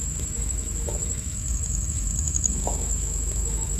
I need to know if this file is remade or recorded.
remade